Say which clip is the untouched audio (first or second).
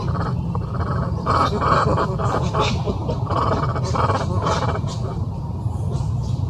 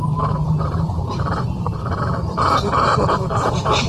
first